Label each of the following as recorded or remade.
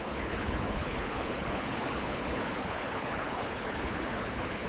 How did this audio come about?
remade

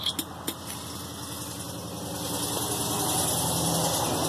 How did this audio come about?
recorded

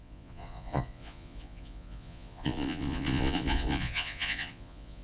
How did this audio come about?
remade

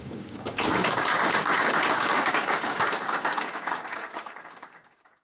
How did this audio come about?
remade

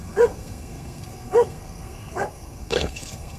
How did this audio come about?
remade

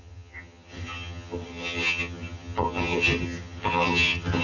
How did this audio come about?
remade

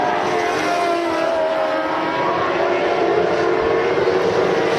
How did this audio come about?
recorded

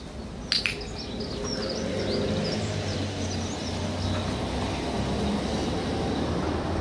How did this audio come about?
recorded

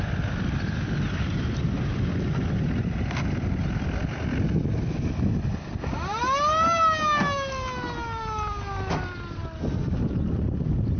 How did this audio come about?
recorded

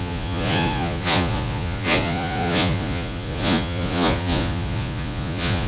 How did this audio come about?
remade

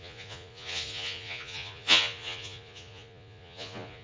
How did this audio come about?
remade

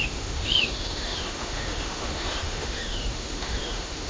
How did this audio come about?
remade